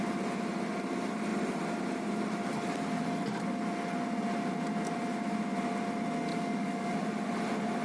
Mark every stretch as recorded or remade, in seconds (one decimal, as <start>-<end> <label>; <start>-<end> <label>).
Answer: 0.0-6.3 recorded; 6.3-6.9 remade; 6.9-7.8 recorded